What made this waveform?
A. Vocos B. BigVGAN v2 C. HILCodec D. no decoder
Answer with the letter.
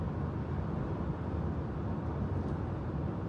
D